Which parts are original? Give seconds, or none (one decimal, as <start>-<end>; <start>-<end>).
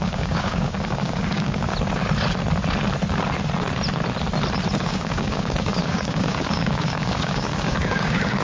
1.7-4.8